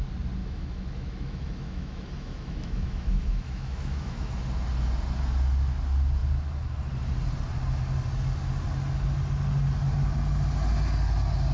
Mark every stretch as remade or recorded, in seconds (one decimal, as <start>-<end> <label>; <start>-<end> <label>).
0.0-0.4 recorded; 0.4-4.3 remade; 4.3-11.5 recorded